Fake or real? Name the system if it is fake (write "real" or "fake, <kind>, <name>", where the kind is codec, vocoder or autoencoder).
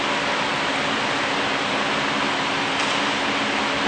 real